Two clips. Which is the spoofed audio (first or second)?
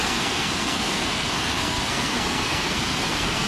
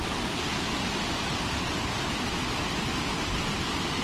first